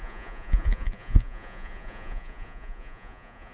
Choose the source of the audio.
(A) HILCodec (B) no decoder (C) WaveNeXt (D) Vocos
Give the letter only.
D